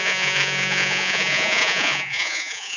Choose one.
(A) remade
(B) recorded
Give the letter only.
A